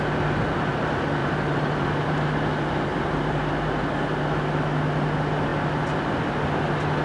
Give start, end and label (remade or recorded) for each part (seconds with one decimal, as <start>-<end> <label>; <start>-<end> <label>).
0.0-1.2 recorded; 1.2-2.1 remade; 2.1-7.0 recorded